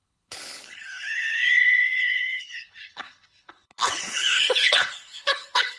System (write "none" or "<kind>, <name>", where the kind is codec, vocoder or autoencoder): codec, HILCodec